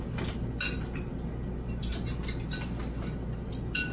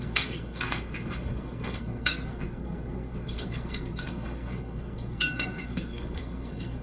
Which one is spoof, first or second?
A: second